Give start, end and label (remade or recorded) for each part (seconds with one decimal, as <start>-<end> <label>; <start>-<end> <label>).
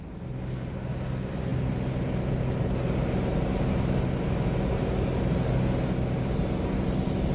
0.0-7.3 recorded